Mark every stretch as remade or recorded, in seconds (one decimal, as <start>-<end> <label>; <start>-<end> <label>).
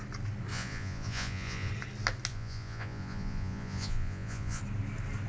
0.0-0.5 recorded; 0.5-1.7 remade; 1.7-2.3 recorded; 2.3-4.6 remade; 4.6-5.3 recorded